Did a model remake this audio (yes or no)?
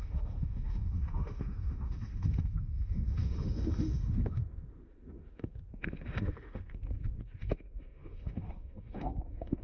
yes